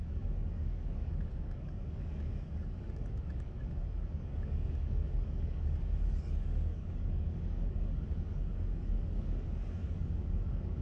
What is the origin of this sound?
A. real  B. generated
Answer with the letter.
B